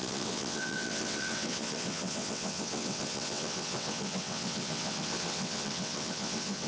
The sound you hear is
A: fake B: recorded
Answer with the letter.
A